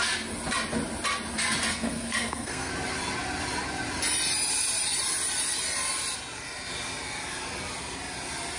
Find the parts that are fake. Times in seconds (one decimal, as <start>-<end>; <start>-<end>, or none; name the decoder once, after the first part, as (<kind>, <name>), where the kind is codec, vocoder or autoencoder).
1.7-2.7 (codec, SNAC)